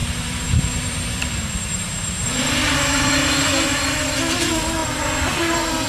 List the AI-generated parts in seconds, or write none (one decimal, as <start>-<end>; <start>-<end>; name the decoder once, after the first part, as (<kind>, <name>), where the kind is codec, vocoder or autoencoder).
0.0-3.1 (vocoder, BigVGAN v2)